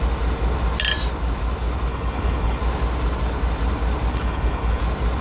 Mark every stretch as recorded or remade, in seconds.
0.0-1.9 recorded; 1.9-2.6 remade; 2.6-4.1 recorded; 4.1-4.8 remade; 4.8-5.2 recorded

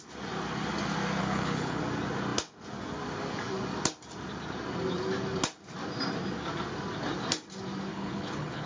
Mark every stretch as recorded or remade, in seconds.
0.0-1.2 recorded; 1.2-1.8 remade; 1.8-7.9 recorded; 7.9-8.7 remade